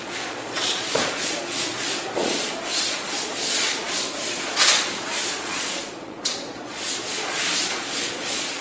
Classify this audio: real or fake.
fake